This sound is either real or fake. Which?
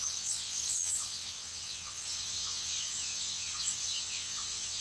fake